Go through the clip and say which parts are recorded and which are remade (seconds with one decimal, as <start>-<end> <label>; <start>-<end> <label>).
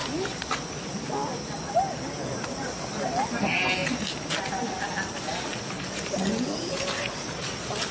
0.0-7.9 recorded